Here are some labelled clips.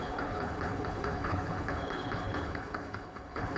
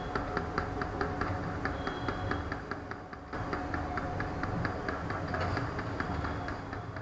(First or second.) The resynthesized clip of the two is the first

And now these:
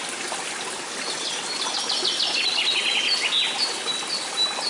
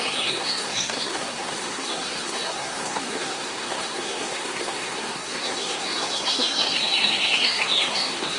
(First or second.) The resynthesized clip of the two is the second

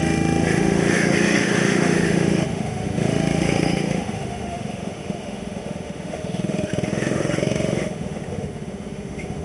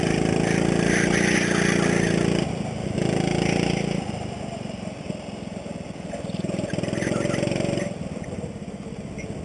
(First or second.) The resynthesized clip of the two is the first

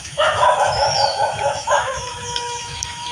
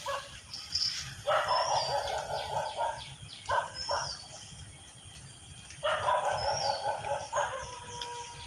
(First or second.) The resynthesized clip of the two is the first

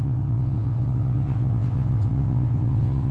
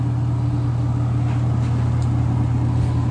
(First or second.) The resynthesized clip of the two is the first